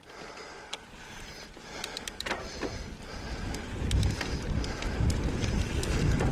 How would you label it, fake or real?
real